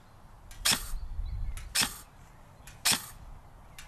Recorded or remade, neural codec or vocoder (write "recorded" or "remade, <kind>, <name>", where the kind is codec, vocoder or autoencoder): recorded